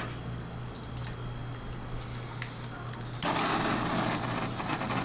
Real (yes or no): yes